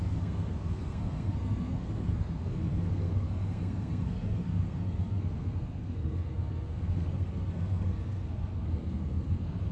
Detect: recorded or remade remade